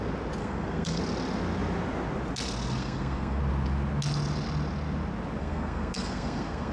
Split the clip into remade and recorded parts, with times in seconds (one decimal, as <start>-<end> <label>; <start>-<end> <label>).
0.0-0.4 recorded; 0.4-1.0 remade; 1.0-2.8 recorded; 2.8-3.4 remade; 3.4-5.4 recorded; 5.4-6.7 remade